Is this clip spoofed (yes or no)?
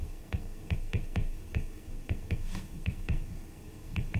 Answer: yes